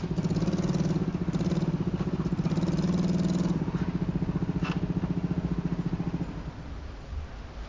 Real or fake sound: real